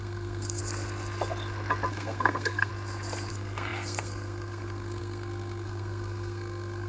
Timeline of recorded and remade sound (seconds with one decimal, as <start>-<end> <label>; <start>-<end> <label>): 0.0-0.6 remade; 0.6-1.9 recorded; 1.9-2.7 remade; 2.7-3.3 recorded; 3.3-6.9 remade